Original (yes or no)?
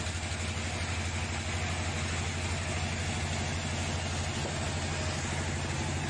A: yes